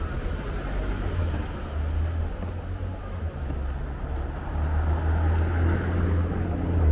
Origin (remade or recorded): recorded